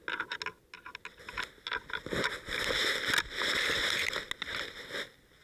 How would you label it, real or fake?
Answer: real